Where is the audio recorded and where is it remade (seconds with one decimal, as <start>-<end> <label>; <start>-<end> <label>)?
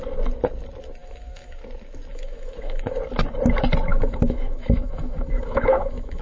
0.0-1.0 recorded; 1.0-1.6 remade; 1.6-2.1 recorded; 2.1-3.0 remade; 3.0-3.9 recorded; 3.9-6.2 remade